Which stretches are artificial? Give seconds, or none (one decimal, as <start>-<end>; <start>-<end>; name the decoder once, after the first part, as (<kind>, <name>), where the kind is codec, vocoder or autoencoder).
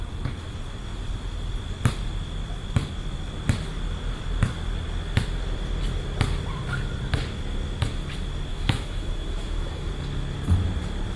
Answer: 8.5-9.9 (autoencoder, DAC-VAE)